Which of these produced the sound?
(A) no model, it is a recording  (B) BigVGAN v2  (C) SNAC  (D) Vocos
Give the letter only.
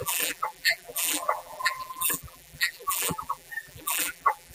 B